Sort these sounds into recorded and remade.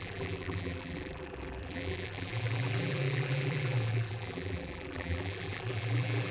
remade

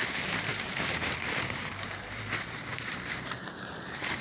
remade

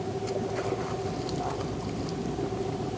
recorded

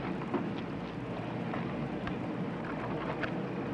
recorded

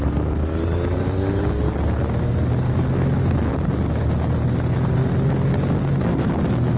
recorded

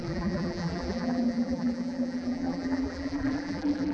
remade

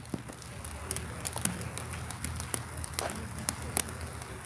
recorded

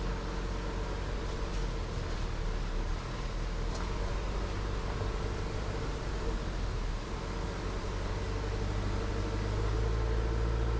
recorded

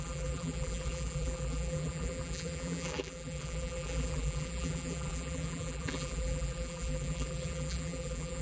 remade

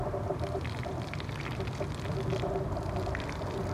recorded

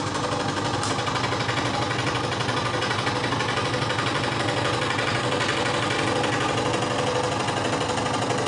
recorded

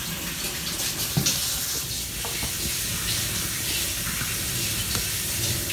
recorded